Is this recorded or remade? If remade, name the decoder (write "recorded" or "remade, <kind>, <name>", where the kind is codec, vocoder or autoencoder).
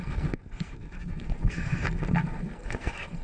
remade, codec, SNAC